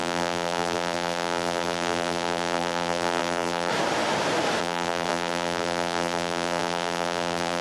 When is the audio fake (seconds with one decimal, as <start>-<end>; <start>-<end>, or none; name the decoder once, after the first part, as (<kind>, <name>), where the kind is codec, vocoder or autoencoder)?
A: 0.0-3.7 (vocoder, BigVGAN v2); 4.6-7.6